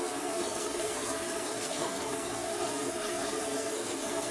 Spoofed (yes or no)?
yes